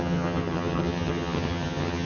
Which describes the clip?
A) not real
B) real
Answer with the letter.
A